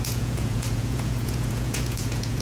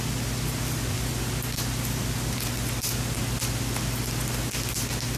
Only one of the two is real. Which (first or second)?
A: second